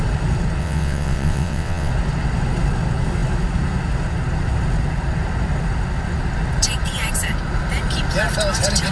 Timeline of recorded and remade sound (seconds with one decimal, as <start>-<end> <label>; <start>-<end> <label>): 0.0-0.6 recorded; 0.6-1.9 remade; 1.9-8.9 recorded